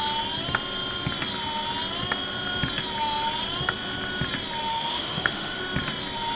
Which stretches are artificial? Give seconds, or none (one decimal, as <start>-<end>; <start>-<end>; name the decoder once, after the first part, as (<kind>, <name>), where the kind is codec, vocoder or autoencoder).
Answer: 4.7-5.6 (autoencoder, DAC-VAE)